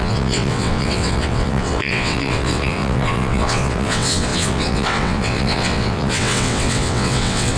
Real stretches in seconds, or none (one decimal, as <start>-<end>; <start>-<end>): none